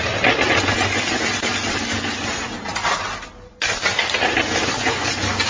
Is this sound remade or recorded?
recorded